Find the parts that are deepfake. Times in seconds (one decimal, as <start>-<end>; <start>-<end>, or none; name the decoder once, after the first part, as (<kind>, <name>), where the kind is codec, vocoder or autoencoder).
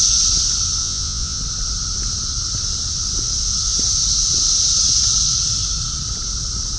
0.8-1.4 (vocoder, Vocos)